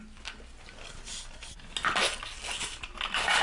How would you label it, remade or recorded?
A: recorded